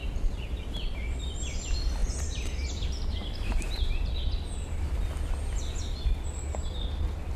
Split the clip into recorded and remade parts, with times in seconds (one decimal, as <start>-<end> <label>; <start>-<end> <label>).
0.0-2.0 recorded; 2.0-4.9 remade; 4.9-7.4 recorded